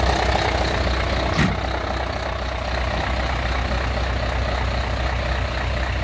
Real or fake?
real